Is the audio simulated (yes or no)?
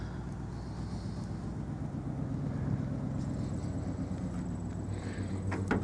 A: no